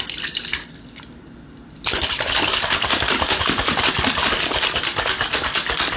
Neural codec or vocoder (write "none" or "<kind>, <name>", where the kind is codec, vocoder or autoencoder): none